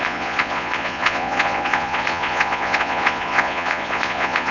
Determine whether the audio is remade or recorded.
remade